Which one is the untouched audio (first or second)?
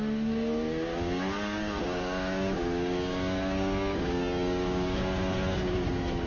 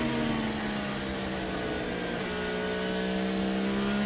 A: second